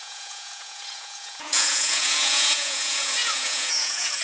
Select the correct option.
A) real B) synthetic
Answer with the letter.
B